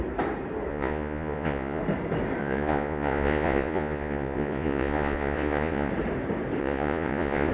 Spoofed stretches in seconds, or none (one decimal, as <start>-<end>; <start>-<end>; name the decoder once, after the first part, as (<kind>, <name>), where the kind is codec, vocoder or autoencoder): 0.7-1.8 (vocoder, Vocos); 2.4-5.9; 6.6-7.5